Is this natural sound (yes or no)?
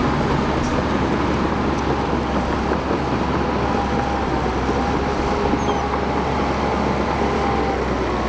yes